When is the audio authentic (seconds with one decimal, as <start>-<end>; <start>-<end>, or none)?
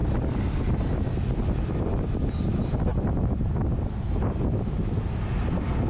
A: 0.0-5.9